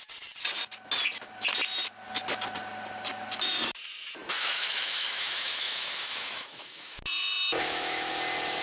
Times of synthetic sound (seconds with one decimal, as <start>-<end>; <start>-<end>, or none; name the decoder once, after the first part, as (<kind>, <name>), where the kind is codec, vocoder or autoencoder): 4.2-8.1 (autoencoder, DAC-VAE)